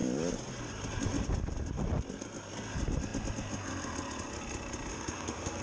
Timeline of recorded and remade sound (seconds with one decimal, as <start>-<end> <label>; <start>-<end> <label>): 0.0-4.9 recorded; 4.9-5.6 remade